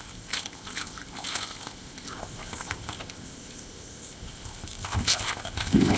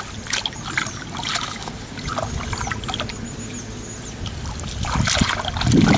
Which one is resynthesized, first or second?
first